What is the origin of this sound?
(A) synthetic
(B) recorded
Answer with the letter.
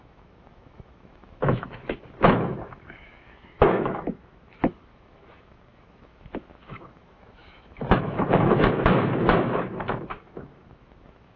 A